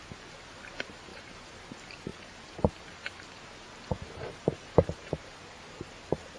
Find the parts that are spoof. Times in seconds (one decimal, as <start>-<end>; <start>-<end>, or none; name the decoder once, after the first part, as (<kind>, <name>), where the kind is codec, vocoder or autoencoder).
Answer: 1.1-1.7 (vocoder, BigVGAN v2); 2.1-3.4; 3.9-5.9